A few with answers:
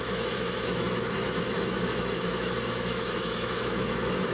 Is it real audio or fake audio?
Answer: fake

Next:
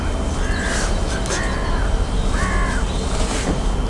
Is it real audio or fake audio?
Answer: real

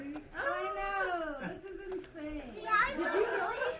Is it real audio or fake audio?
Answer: real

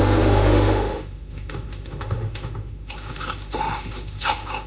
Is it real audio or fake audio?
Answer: fake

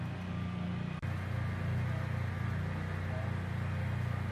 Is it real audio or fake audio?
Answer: real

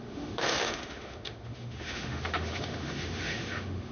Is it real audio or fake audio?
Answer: fake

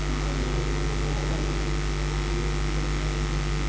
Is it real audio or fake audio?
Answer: real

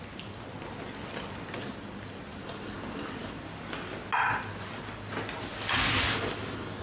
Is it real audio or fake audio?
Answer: real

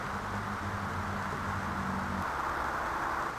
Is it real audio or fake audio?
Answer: real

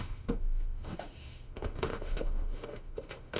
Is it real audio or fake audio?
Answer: fake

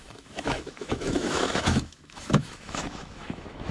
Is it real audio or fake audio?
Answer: fake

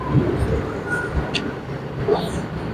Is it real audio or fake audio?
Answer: real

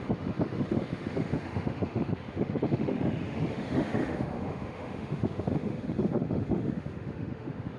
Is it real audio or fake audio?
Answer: fake